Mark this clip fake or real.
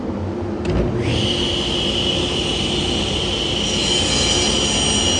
real